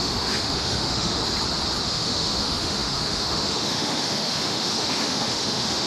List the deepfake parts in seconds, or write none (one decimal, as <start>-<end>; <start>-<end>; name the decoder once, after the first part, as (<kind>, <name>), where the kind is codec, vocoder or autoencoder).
0.0-1.2 (autoencoder, DAC-VAE); 1.8-5.9